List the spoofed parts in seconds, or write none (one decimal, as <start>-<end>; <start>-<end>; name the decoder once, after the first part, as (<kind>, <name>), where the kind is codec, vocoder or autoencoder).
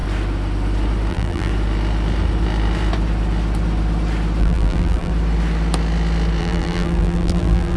1.1-1.5 (vocoder, BigVGAN v2); 4.4-5.1; 6.4-7.8